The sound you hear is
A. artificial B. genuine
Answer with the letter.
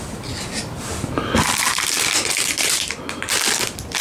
B